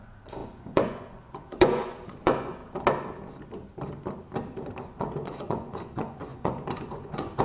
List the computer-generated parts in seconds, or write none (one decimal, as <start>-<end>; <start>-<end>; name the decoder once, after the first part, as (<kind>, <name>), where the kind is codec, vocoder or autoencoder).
0.0-2.6 (vocoder, Vocos); 4.8-7.4